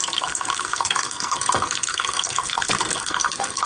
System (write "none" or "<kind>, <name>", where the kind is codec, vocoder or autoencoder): codec, SNAC